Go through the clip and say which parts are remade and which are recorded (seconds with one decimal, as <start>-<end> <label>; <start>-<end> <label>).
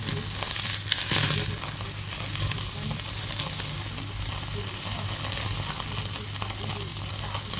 0.0-7.6 recorded